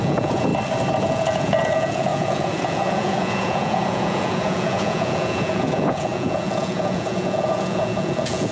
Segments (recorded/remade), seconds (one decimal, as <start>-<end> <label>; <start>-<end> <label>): 0.0-0.5 remade; 0.5-1.0 recorded; 1.0-8.5 remade